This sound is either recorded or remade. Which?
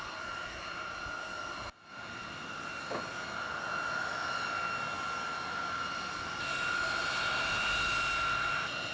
recorded